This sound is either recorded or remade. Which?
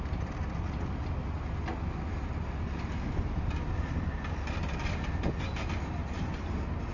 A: recorded